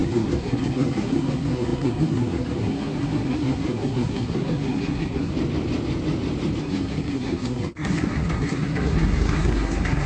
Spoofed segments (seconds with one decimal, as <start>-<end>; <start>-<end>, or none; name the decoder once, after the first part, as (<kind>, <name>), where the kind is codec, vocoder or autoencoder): 0.0-5.3 (codec, SNAC); 6.6-10.1

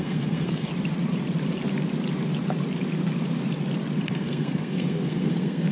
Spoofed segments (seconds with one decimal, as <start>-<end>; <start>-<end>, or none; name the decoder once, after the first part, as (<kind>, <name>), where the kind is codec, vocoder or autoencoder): 0.0-0.7 (codec, SNAC); 4.1-5.7